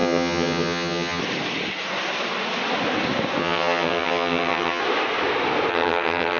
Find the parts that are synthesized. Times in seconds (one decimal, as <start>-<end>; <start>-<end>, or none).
0.0-1.2; 3.4-4.8; 5.7-6.4